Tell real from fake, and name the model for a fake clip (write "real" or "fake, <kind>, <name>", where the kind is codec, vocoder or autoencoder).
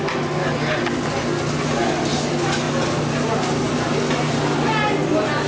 real